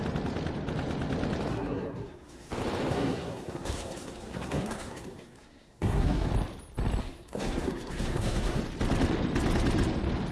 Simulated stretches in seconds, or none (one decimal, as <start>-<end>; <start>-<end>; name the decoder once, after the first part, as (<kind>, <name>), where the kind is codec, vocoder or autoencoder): 1.5-2.5 (codec, SNAC); 2.9-6.3; 7.0-8.6